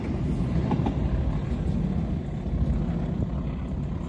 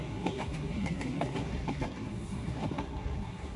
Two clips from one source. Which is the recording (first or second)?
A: first